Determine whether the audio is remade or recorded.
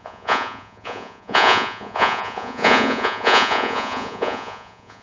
remade